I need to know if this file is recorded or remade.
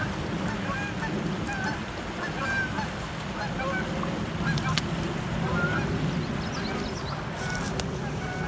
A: recorded